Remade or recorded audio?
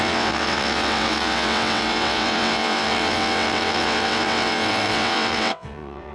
remade